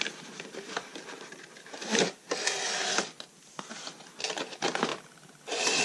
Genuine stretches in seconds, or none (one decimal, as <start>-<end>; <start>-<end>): 0.0-5.8